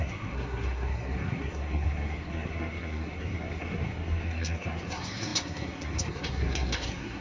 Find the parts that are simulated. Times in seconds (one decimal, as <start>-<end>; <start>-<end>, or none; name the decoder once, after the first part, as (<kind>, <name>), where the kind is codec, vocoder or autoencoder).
0.0-7.2 (codec, SNAC)